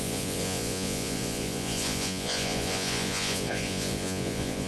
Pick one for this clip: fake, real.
fake